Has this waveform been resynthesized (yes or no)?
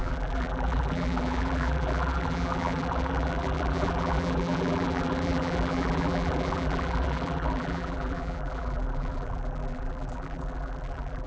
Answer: yes